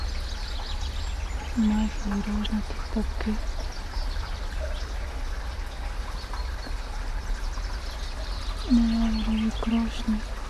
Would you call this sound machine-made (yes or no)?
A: no